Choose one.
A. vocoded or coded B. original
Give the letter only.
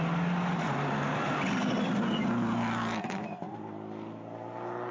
B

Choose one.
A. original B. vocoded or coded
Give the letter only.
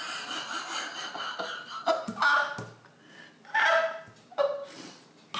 A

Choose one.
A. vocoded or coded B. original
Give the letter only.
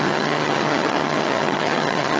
A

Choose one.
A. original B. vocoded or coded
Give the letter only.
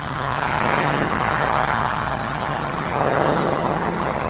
B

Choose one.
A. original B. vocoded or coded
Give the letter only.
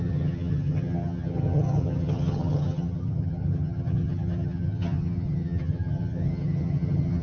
B